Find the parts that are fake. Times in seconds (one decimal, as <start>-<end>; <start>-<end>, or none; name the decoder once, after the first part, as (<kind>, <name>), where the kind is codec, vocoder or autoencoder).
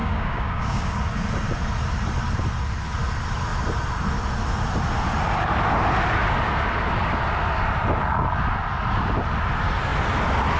0.0-1.0 (codec, DAC)